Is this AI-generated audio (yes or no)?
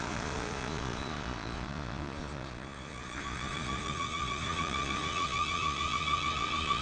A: yes